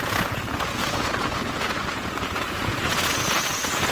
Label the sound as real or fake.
fake